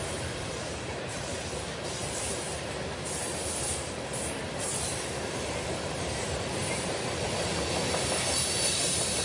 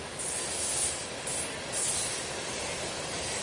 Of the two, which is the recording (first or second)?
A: second